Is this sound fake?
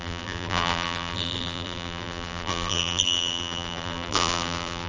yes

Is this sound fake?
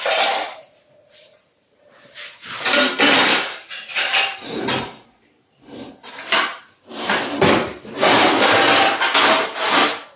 yes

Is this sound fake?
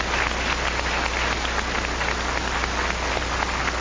no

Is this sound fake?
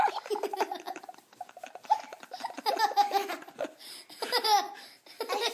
no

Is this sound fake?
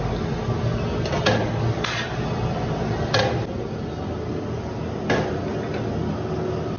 no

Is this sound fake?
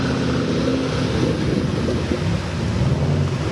no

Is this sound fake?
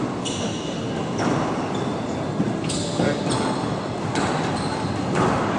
no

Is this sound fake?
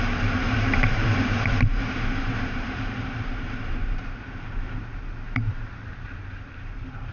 yes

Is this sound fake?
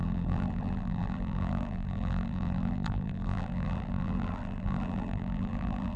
yes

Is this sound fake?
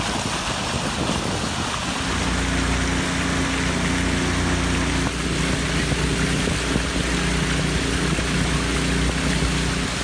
no